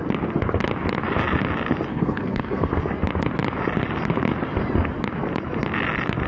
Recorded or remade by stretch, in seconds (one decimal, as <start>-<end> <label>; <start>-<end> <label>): 0.0-1.9 recorded; 1.9-2.7 remade; 2.7-6.3 recorded